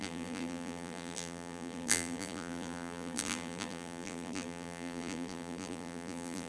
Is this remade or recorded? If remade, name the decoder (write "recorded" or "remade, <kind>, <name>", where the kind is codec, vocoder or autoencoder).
remade, vocoder, BigVGAN v2